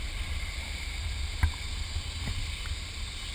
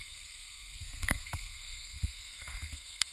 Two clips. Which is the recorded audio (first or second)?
first